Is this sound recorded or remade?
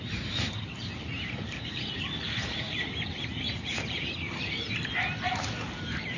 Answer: remade